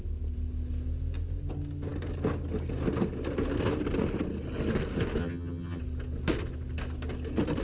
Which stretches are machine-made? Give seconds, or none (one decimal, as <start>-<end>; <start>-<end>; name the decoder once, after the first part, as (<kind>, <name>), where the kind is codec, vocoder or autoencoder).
5.2-5.8 (vocoder, HiFi-GAN)